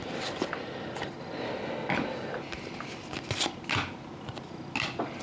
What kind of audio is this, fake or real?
real